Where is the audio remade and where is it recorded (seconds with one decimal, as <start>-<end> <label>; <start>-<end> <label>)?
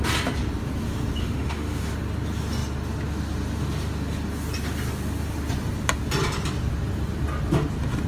0.0-1.2 recorded; 1.2-1.9 remade; 1.9-8.1 recorded